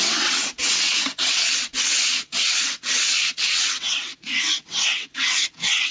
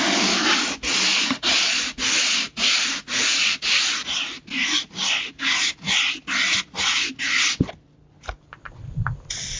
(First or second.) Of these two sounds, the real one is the second